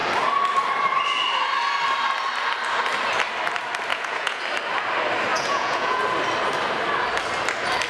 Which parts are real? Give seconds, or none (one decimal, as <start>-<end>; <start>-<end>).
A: 0.0-3.9; 4.4-5.3; 6.0-7.9